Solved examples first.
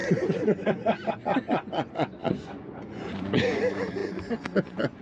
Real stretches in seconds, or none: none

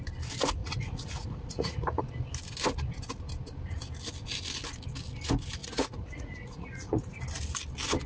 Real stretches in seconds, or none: 0.0-0.6; 2.0-5.6; 7.2-8.1

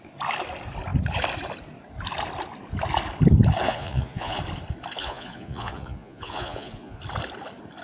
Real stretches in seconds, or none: 0.0-3.6; 4.4-5.0; 7.0-7.8

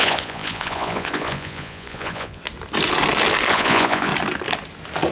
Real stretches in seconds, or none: 2.4-3.5; 4.1-5.1

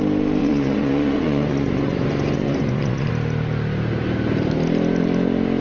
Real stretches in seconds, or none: 0.0-0.4; 3.1-5.6

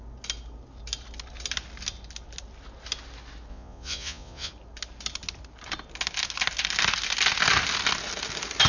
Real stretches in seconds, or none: 0.0-3.5; 4.5-8.7

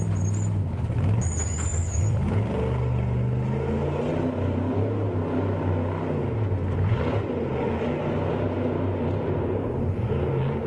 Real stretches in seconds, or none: 0.0-10.7